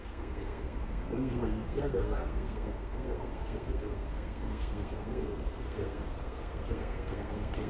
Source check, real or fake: fake